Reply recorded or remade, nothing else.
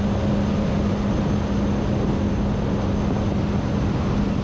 recorded